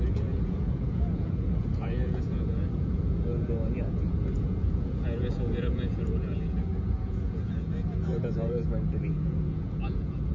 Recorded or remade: remade